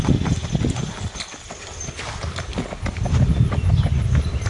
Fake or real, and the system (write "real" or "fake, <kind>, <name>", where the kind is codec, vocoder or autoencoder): real